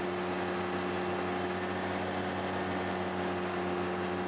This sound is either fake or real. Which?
real